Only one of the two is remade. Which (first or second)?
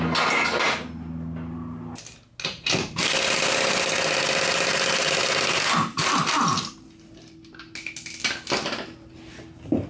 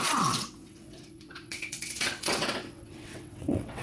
second